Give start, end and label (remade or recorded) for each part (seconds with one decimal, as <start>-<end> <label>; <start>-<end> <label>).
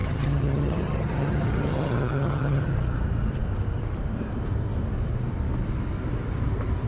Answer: 0.0-2.7 remade; 2.7-6.9 recorded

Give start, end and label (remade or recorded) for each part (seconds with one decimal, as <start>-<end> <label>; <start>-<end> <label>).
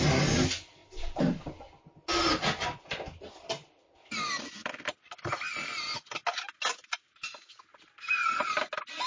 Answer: 0.0-9.1 recorded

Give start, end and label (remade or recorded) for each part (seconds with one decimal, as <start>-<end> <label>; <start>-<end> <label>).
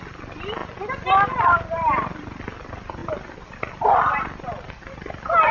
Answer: 0.0-5.5 recorded